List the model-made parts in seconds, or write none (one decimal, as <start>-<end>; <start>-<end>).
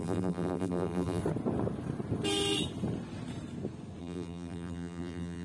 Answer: 0.0-1.2; 4.0-5.4